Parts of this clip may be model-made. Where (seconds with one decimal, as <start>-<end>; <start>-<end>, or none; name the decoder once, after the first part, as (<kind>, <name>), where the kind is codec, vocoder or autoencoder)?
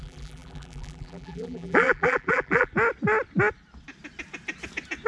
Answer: 0.0-2.7 (vocoder, BigVGAN v2)